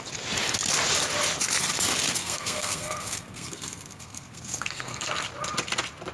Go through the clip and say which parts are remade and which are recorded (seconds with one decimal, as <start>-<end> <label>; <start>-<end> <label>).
0.0-2.2 recorded; 2.2-5.1 remade; 5.1-6.1 recorded